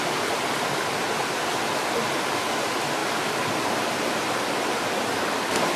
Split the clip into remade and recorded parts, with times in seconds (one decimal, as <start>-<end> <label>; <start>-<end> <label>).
0.0-5.8 recorded